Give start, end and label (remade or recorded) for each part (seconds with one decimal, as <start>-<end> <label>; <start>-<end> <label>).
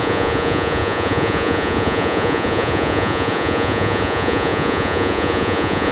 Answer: 0.0-5.9 remade